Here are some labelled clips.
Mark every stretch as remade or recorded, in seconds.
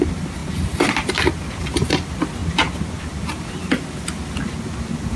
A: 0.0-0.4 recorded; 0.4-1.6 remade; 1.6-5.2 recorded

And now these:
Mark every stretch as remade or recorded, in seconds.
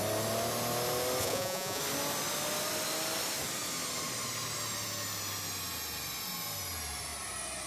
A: 0.0-1.2 recorded; 1.2-1.8 remade; 1.8-7.7 recorded